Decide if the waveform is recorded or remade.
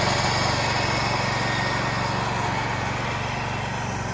recorded